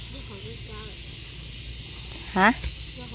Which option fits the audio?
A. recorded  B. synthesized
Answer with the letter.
A